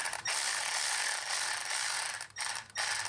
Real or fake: real